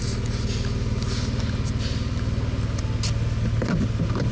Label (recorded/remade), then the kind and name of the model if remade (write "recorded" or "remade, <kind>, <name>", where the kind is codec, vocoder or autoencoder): recorded